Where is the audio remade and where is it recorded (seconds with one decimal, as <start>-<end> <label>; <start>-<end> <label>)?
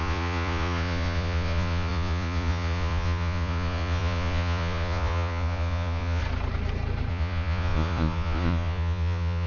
0.0-6.2 remade; 6.2-7.1 recorded; 7.1-9.5 remade